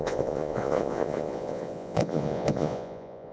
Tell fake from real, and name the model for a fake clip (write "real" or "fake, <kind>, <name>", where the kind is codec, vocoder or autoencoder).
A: fake, vocoder, Vocos